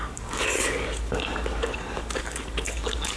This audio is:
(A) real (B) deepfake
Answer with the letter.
B